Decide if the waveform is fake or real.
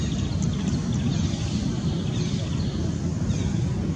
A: real